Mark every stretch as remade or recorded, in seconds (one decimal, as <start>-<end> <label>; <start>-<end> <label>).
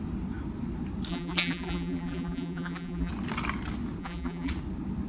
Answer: 0.0-1.1 recorded; 1.1-3.1 remade; 3.1-4.0 recorded; 4.0-4.5 remade; 4.5-5.1 recorded